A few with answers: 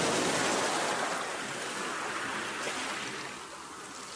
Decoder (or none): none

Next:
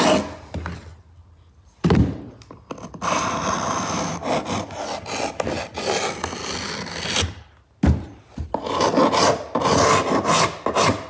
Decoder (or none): none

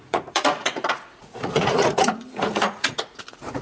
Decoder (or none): vocoder, Vocos